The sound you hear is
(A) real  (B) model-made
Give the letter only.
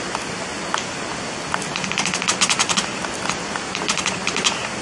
A